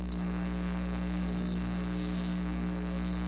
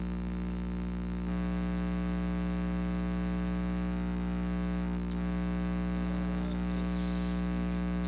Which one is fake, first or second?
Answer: first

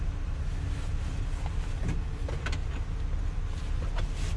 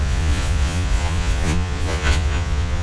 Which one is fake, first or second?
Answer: second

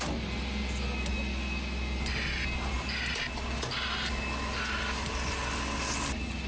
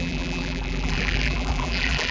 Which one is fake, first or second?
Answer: second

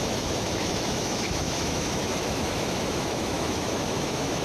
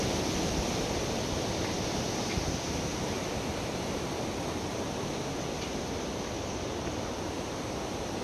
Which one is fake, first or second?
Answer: first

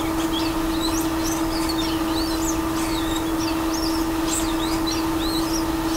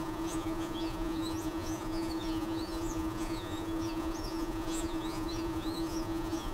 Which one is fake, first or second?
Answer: second